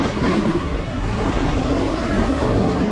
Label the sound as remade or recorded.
remade